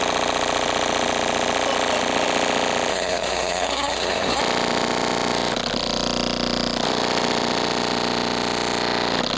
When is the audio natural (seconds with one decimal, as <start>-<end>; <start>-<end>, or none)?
0.0-2.9; 4.4-9.4